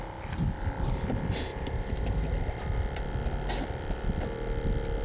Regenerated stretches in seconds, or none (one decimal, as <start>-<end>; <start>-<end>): 1.5-2.6